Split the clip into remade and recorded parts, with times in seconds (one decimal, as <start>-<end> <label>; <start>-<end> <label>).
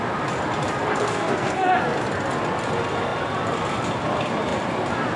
0.0-0.9 recorded; 0.9-1.8 remade; 1.8-5.2 recorded